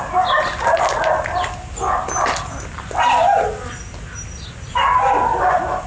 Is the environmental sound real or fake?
real